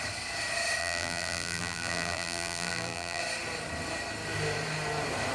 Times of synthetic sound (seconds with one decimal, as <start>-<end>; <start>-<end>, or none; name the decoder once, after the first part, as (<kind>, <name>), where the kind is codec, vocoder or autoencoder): 0.8-3.2 (vocoder, BigVGAN v2)